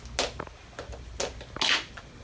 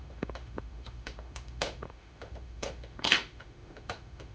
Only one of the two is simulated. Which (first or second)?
second